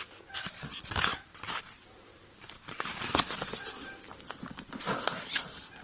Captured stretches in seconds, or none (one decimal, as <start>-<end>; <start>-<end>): 0.0-1.1; 3.6-5.8